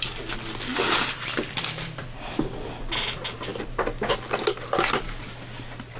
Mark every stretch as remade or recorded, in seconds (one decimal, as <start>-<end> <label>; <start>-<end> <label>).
0.0-0.7 recorded; 0.7-2.7 remade; 2.7-6.0 recorded